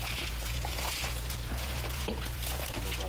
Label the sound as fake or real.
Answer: fake